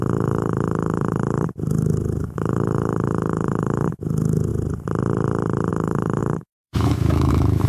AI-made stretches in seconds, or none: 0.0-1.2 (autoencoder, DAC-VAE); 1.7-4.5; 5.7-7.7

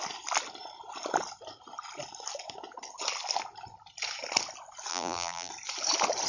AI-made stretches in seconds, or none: 4.9-5.5 (vocoder, BigVGAN v2)

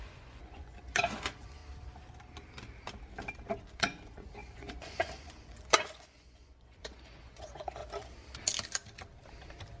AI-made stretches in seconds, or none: 0.0-1.6 (vocoder, Vocos); 3.7-7.8

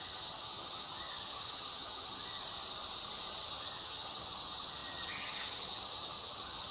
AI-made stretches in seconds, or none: 0.0-2.4 (vocoder, HiFi-GAN); 3.3-6.7

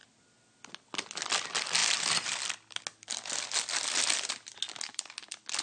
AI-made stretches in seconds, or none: none

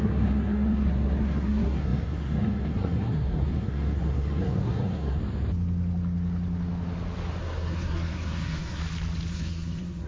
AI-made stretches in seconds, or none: 0.0-5.2 (codec, SNAC); 7.4-8.8; 9.3-10.1

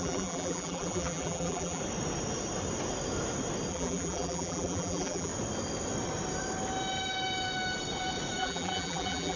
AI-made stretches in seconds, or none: 0.0-1.8 (vocoder, BigVGAN v2); 3.7-5.3; 8.4-9.4